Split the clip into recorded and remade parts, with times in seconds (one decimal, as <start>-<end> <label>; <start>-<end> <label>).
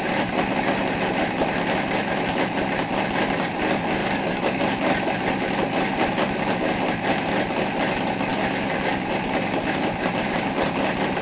0.0-4.0 recorded; 4.0-4.6 remade; 4.6-11.2 recorded